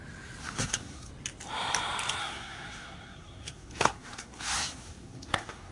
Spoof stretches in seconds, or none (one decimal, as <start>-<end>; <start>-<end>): 0.4-1.1; 2.2-5.7